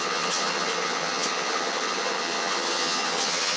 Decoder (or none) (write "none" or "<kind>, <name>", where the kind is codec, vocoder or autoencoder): vocoder, HiFi-GAN